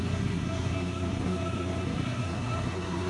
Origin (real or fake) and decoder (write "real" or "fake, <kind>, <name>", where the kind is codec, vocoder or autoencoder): fake, codec, SNAC